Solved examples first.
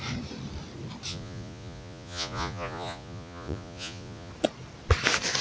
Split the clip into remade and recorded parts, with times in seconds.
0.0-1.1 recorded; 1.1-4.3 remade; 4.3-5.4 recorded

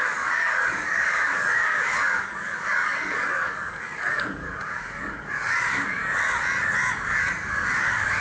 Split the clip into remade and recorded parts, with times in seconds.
0.0-6.0 remade; 6.0-6.9 recorded; 6.9-8.2 remade

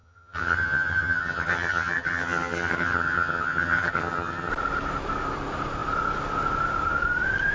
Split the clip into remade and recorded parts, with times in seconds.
0.0-4.5 remade; 4.5-7.5 recorded

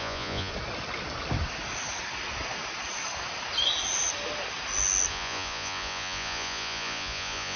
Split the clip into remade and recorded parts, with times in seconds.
0.0-0.5 remade; 0.5-5.1 recorded; 5.1-7.6 remade

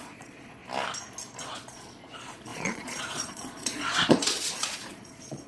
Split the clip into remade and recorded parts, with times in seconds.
0.0-0.6 remade; 0.6-1.4 recorded; 1.4-5.5 remade

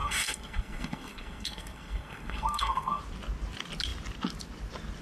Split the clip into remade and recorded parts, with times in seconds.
0.0-3.0 remade; 3.0-5.0 recorded